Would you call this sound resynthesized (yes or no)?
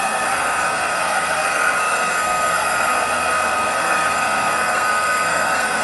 yes